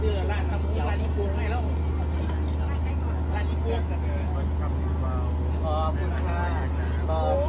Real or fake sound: real